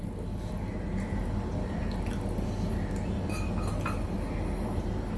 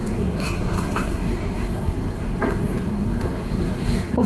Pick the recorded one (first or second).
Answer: first